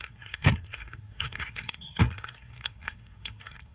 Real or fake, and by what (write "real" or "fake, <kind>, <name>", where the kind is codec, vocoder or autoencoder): fake, codec, SNAC